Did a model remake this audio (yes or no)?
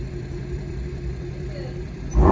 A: yes